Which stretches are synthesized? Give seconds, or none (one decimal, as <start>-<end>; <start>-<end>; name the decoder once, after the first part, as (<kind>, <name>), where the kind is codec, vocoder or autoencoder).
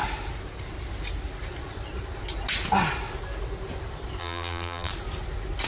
4.2-4.9 (vocoder, BigVGAN v2)